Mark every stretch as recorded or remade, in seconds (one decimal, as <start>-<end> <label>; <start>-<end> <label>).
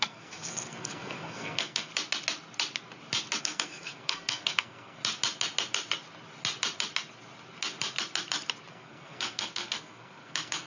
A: 0.0-1.9 remade; 1.9-3.4 recorded; 3.4-5.0 remade; 5.0-8.7 recorded; 8.7-10.7 remade